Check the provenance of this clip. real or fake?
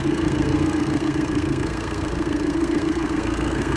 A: fake